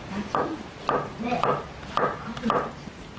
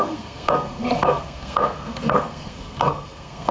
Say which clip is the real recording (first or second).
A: first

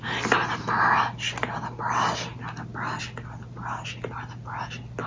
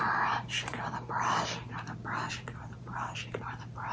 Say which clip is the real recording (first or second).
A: first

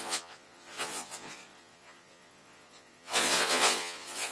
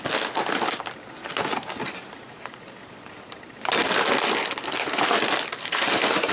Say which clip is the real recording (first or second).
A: second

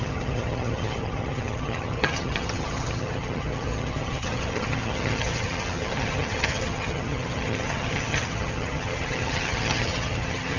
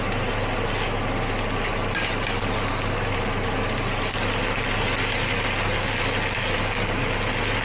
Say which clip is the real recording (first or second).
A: second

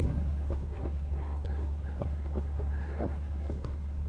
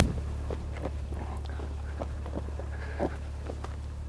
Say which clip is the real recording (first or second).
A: second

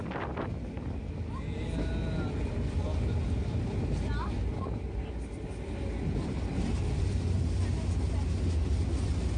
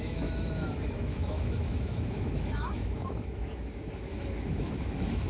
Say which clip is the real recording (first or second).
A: first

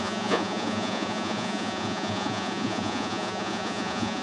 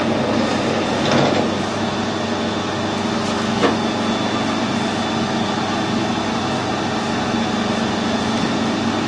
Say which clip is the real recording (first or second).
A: second